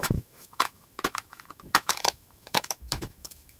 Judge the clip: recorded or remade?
remade